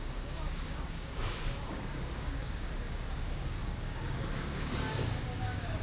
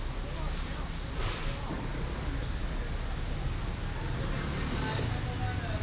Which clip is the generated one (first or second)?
first